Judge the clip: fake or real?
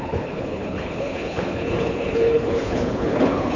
fake